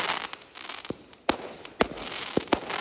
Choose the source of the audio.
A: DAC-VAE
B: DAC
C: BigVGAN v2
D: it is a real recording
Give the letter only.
D